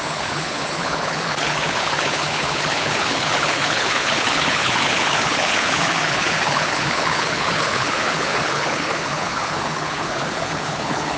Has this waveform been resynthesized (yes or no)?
yes